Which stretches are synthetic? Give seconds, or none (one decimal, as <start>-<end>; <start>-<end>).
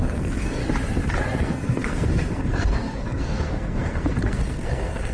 0.0-0.6; 1.4-5.1